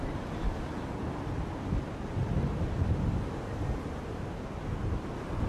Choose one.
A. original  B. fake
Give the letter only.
A